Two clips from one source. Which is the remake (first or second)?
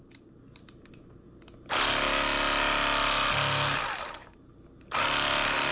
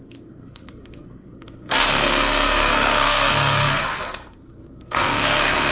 second